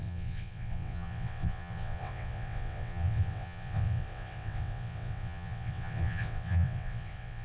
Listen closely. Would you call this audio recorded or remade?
remade